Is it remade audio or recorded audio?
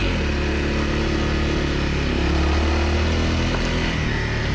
recorded